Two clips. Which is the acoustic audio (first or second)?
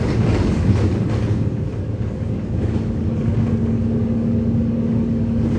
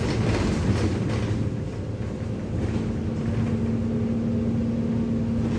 second